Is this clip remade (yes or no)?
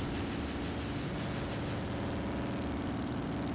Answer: no